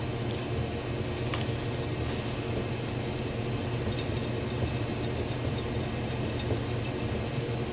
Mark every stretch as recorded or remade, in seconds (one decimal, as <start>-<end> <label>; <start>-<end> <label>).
0.0-4.9 recorded; 4.9-6.8 remade; 6.8-7.7 recorded